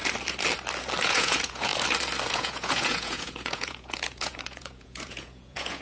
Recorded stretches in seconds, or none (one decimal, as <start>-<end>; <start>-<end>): 0.0-1.0; 1.7-2.3